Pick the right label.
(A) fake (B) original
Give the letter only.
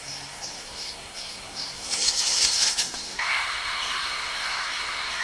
A